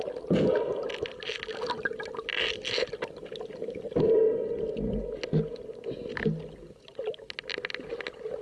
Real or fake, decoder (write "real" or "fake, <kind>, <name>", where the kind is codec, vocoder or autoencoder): real